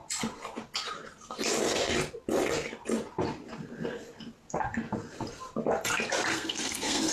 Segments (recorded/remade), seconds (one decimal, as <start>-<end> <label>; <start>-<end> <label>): 0.0-6.3 recorded; 6.3-7.1 remade